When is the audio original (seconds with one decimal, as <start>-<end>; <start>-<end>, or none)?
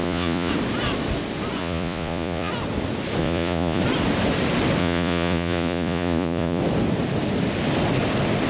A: 0.5-1.6; 2.5-3.2; 3.8-4.8; 6.6-8.5